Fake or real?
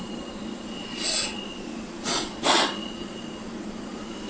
fake